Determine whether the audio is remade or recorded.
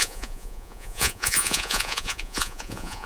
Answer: remade